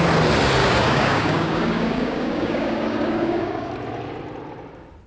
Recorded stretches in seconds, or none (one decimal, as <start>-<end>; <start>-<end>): 0.0-0.6; 3.7-5.1